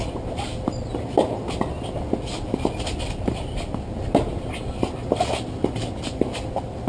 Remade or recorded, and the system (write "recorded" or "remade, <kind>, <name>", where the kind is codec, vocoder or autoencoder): recorded